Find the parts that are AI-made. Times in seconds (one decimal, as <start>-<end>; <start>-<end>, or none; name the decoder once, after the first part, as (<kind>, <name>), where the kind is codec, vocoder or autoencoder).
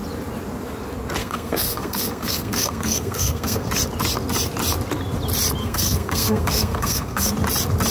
1.2-3.7 (codec, SNAC); 5.6-7.3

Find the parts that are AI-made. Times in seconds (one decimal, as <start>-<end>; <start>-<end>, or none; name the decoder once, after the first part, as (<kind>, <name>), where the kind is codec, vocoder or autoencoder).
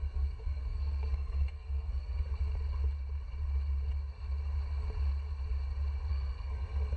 0.0-2.3 (codec, SNAC); 6.1-7.0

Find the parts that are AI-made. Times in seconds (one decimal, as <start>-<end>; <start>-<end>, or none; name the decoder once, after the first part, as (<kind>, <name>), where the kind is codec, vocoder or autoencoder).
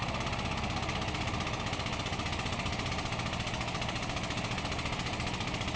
none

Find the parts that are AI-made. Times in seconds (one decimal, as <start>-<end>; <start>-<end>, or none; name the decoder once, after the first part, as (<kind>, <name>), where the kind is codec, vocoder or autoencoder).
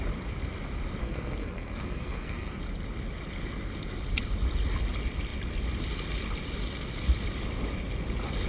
1.0-2.6 (codec, SNAC)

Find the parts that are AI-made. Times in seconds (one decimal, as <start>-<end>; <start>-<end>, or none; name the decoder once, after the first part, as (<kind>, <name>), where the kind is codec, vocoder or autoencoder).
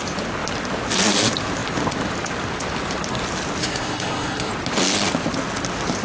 3.6-4.5 (codec, SNAC)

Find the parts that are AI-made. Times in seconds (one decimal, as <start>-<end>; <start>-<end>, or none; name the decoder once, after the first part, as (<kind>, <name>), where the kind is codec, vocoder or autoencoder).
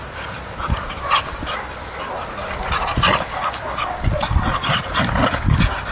none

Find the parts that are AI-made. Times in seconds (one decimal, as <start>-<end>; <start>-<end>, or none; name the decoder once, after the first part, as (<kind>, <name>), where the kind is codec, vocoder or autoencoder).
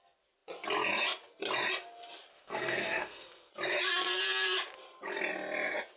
2.3-3.5 (codec, SNAC)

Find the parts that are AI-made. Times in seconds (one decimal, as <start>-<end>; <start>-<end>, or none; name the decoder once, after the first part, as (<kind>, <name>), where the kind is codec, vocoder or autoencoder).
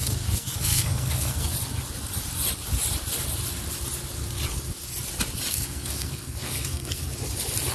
0.0-1.5 (codec, SNAC); 5.5-7.0